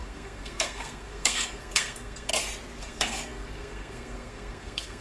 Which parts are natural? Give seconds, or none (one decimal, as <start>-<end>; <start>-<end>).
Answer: 2.3-2.8